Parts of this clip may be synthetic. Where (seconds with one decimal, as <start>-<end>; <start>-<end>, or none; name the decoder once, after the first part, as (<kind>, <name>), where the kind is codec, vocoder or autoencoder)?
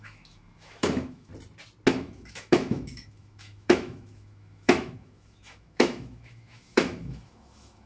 0.0-1.3 (autoencoder, DAC-VAE); 1.9-7.9